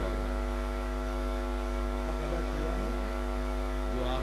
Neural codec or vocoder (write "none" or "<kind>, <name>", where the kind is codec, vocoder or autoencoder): codec, DAC